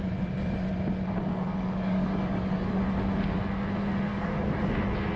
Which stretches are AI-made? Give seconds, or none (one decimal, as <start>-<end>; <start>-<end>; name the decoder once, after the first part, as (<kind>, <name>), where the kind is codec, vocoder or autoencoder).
1.3-2.8 (codec, DAC); 4.1-4.7